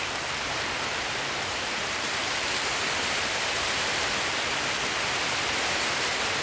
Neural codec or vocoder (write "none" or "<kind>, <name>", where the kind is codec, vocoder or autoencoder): none